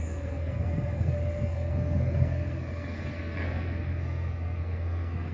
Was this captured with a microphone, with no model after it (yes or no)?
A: no